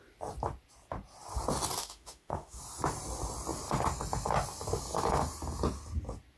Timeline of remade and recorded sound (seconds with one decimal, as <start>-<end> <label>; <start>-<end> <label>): 0.0-1.8 recorded; 1.8-2.6 remade; 2.6-6.4 recorded